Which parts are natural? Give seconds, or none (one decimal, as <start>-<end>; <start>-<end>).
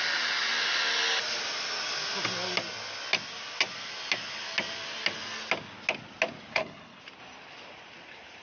0.0-6.5; 7.0-8.4